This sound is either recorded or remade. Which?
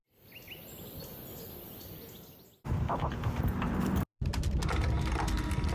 recorded